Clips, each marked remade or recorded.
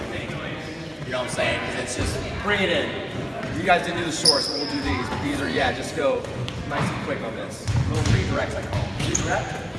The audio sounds remade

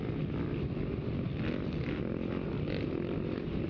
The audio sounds recorded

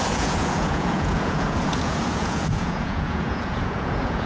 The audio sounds remade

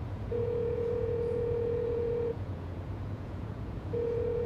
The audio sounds remade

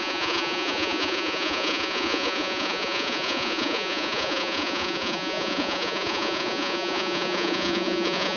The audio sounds remade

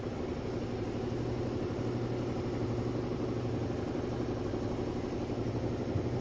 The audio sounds recorded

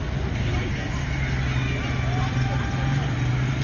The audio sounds recorded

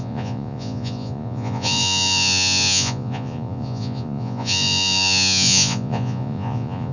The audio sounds remade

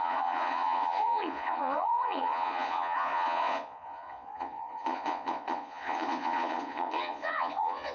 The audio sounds remade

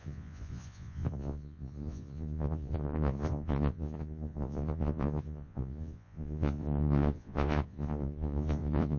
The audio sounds remade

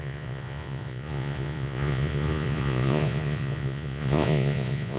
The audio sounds remade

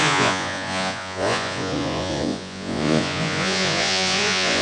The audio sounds remade